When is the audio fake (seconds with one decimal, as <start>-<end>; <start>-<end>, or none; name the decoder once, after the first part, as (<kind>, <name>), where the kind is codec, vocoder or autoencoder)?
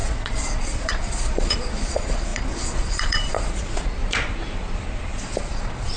0.0-4.0 (vocoder, Vocos); 5.4-6.0